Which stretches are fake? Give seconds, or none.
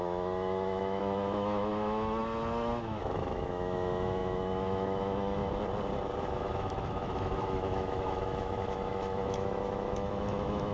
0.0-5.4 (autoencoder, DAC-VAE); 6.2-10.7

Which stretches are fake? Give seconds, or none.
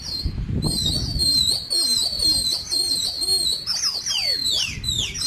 none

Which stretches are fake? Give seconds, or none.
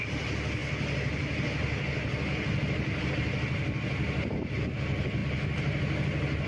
none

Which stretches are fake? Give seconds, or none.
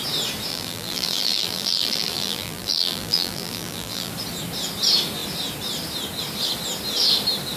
0.5-4.1 (vocoder, BigVGAN v2)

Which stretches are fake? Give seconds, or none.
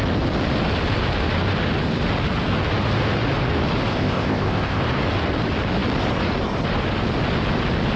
3.9-4.8 (codec, ZipCodec)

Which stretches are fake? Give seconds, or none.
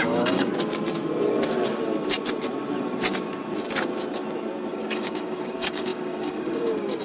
0.0-0.5 (codec, DAC); 4.7-7.0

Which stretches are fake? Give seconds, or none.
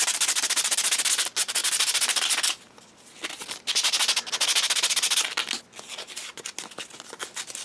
none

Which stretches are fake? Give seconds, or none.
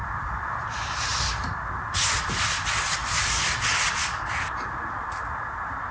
0.0-0.6 (vocoder, BigVGAN v2); 1.1-1.7; 3.0-3.9